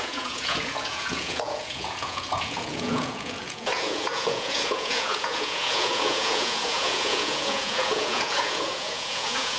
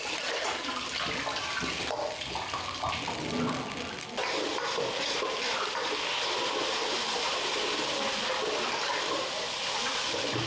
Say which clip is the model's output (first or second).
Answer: first